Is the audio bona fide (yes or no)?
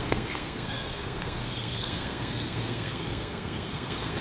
no